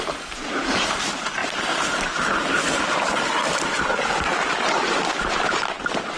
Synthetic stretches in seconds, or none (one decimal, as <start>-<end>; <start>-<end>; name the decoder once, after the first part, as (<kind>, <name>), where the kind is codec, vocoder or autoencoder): 0.0-1.4 (vocoder, BigVGAN v2); 4.2-6.2